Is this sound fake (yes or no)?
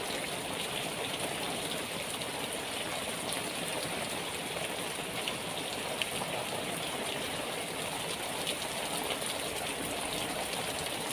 no